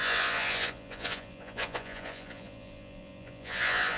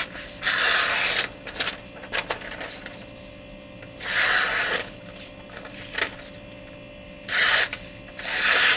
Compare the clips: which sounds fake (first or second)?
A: first